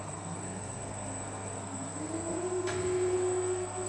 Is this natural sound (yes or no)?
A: no